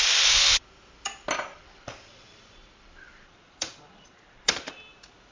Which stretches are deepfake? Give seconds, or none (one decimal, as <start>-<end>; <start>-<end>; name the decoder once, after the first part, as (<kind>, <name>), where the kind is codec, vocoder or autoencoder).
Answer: 1.5-4.7 (vocoder, Vocos)

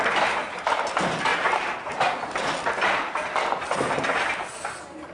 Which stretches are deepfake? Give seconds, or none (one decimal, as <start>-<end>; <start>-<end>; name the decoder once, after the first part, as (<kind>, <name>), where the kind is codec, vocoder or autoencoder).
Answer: none

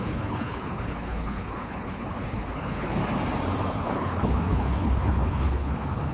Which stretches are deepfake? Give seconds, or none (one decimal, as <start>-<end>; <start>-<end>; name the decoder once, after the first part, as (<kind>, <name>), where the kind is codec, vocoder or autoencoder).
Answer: 0.0-3.0 (codec, HILCodec); 3.7-6.1

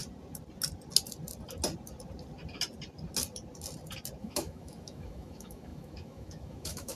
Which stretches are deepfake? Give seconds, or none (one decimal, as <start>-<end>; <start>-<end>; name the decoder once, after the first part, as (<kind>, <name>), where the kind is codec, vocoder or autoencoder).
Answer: 4.2-7.0 (autoencoder, DAC-VAE)